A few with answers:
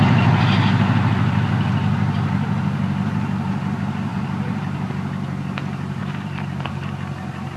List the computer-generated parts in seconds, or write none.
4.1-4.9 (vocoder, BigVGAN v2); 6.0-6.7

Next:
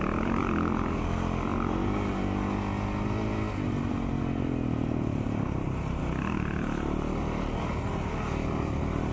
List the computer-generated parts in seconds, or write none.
none

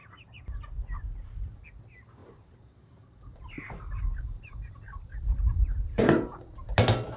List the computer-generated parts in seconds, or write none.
0.0-0.6 (vocoder, BigVGAN v2); 2.2-6.5